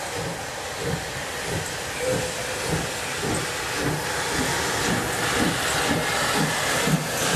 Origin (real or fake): real